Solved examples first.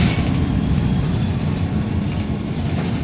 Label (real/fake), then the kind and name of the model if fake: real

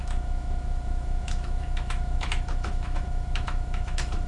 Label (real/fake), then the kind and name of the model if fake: fake, autoencoder, DAC-VAE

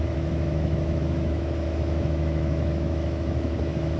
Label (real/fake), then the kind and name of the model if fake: fake, autoencoder, DAC-VAE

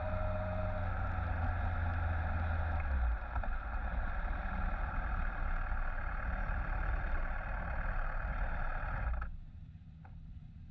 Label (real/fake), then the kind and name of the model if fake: real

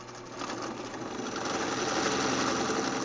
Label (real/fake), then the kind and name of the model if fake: real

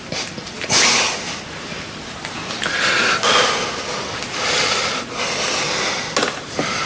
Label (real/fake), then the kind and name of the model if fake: real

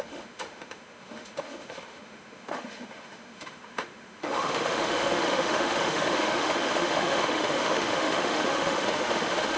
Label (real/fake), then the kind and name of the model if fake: fake, autoencoder, DAC-VAE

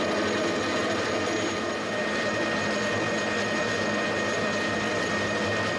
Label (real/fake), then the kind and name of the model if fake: real